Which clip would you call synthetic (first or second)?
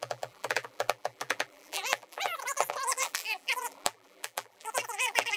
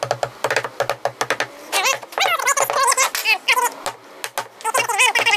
first